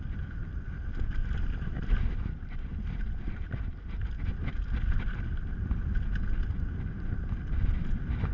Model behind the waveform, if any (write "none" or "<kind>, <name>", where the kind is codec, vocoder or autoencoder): none